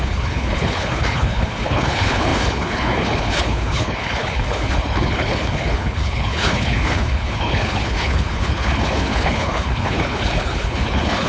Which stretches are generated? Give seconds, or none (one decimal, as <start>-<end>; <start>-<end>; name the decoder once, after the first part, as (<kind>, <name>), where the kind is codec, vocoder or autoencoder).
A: 0.0-11.3 (codec, HILCodec)